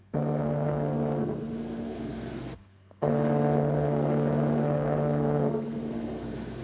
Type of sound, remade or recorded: remade